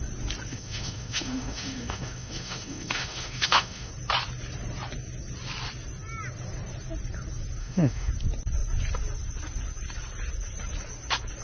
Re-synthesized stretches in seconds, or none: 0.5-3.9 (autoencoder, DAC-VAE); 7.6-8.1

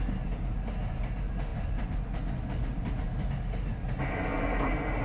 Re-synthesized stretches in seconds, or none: none

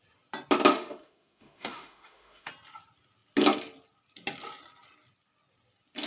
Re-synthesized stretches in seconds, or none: 0.7-2.5 (autoencoder, DAC-VAE)

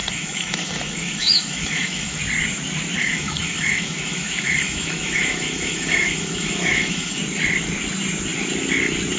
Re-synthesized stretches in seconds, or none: 0.0-2.2 (autoencoder, DAC-VAE); 3.0-7.2

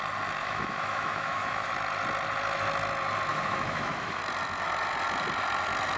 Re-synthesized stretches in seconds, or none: 0.4-1.7 (autoencoder, DAC-VAE); 3.3-4.2

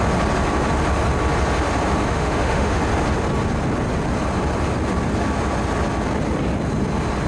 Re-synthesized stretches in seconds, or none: 2.1-2.8 (autoencoder, DAC-VAE)